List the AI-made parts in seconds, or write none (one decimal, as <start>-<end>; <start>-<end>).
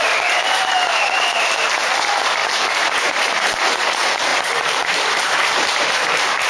0.0-6.5